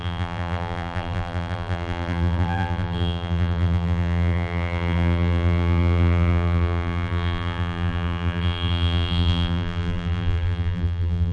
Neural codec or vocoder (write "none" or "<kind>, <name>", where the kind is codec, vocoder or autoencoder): vocoder, BigVGAN v2